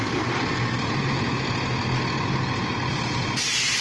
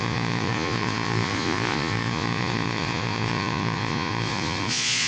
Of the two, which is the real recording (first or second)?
first